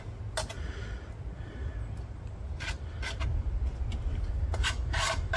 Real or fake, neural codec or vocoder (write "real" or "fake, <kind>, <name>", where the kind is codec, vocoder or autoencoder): real